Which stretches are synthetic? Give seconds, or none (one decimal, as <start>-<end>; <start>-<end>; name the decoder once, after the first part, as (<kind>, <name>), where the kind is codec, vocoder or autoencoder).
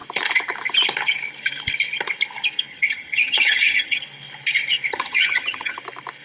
2.7-4.0 (vocoder, HiFi-GAN); 4.9-5.8